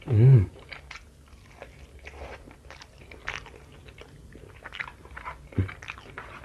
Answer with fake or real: real